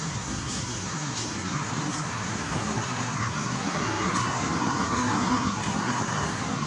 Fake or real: fake